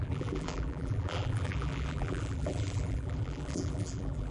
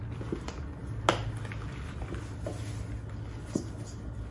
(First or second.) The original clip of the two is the second